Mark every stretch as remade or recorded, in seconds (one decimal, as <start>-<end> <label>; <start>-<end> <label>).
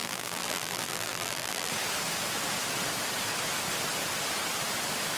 0.0-1.7 remade; 1.7-5.2 recorded